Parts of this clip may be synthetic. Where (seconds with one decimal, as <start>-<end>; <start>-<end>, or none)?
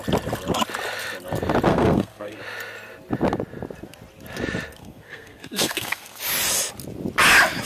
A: 1.7-2.4; 4.8-6.2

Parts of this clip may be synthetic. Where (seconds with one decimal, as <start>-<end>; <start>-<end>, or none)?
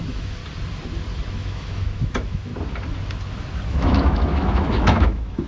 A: 0.0-0.4; 1.3-2.5; 3.7-5.5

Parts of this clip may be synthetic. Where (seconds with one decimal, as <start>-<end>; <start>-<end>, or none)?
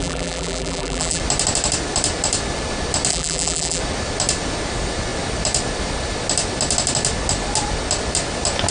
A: 0.0-1.2; 3.1-3.8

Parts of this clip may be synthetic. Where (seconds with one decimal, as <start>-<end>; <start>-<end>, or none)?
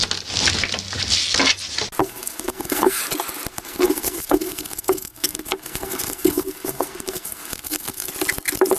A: 2.0-3.0; 3.5-8.1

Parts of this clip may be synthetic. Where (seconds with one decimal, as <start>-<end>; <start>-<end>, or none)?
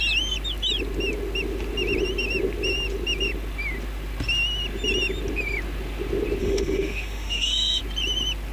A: 6.4-7.8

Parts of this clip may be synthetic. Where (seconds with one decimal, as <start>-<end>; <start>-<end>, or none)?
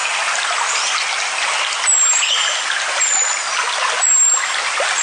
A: none